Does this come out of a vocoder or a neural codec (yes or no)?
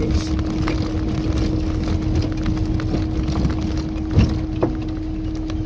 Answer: no